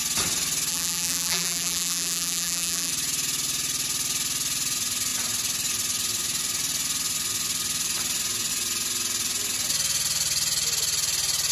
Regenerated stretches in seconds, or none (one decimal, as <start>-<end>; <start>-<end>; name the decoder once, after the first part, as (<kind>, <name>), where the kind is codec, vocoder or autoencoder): 0.7-2.9 (vocoder, BigVGAN v2)